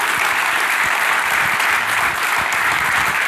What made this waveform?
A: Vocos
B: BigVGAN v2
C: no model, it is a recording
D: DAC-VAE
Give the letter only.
B